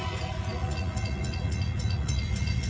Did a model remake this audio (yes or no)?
yes